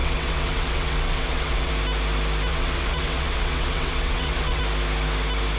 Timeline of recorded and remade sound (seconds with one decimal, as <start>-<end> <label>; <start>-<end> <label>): 0.0-1.7 remade; 1.7-2.5 recorded; 2.5-4.6 remade; 4.6-5.6 recorded

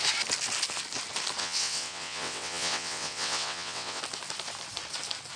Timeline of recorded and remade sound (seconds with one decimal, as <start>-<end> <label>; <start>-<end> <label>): 0.0-1.4 recorded; 1.4-4.0 remade; 4.0-5.4 recorded

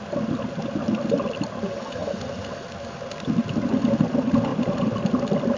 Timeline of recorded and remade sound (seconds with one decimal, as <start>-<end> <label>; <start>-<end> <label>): 0.0-5.6 recorded

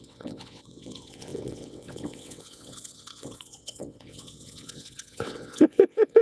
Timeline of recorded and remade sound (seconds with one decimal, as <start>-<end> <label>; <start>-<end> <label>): 0.0-6.2 remade

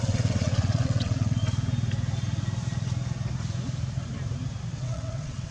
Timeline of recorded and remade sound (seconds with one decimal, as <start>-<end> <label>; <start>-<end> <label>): 0.0-1.4 remade; 1.4-4.7 recorded; 4.7-5.5 remade